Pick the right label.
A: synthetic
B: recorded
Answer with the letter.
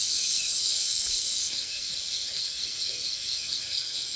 A